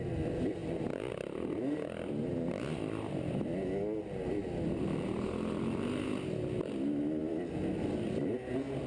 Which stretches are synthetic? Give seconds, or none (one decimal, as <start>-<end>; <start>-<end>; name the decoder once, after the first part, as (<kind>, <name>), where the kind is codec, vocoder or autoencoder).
none